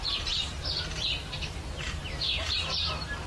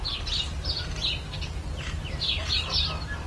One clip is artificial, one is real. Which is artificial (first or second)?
first